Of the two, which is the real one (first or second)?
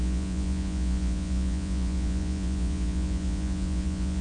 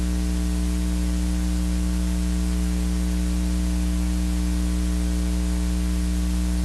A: second